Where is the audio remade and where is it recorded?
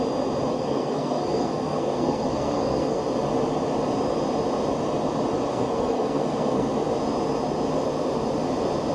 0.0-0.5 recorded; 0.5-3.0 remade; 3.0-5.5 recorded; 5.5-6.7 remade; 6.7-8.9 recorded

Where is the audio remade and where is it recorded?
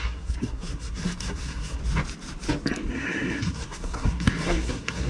0.0-1.8 remade; 1.8-2.9 recorded; 2.9-5.1 remade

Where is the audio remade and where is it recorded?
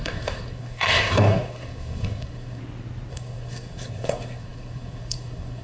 0.0-2.6 remade; 2.6-3.1 recorded; 3.1-5.6 remade